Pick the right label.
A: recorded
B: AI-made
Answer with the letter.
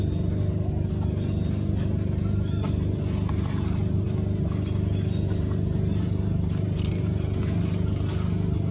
A